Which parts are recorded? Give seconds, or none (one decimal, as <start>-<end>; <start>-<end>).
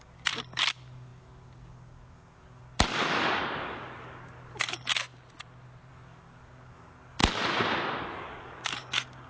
5.0-5.9; 7.2-8.0